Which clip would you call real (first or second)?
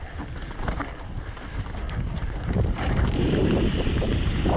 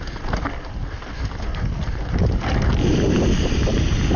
second